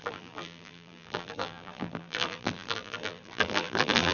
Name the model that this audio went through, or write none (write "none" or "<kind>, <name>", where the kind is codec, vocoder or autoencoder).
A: vocoder, BigVGAN v2